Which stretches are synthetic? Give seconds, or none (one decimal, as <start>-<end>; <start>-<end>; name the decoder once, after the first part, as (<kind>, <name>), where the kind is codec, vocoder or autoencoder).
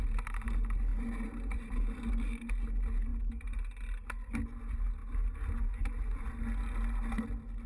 0.9-2.5 (vocoder, BigVGAN v2); 5.0-6.3